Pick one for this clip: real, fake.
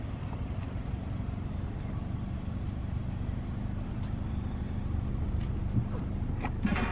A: fake